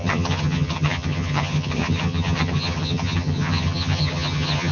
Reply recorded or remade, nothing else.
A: remade